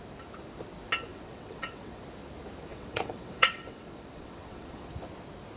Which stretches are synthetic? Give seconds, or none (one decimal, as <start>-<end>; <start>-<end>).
1.1-2.0; 2.7-4.9